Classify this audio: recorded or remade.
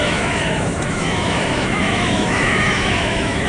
remade